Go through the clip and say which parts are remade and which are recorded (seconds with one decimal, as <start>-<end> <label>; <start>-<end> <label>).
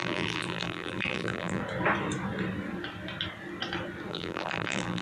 0.0-1.6 remade; 1.6-4.1 recorded; 4.1-5.0 remade